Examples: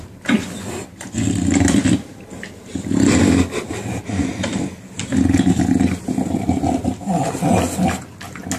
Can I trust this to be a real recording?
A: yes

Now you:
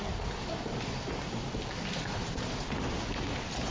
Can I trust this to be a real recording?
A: yes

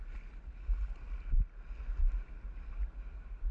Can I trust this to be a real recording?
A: yes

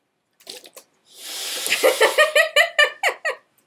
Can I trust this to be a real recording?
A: yes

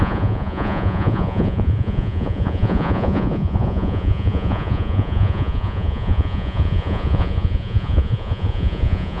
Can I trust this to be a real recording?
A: no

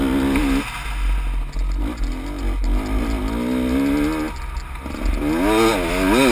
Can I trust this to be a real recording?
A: yes